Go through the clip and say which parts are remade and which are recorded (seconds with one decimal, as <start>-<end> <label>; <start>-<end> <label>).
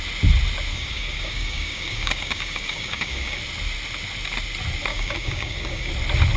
0.0-0.7 recorded; 0.7-3.4 remade; 3.4-4.9 recorded; 4.9-5.9 remade; 5.9-6.4 recorded